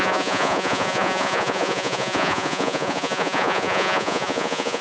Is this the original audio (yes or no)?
no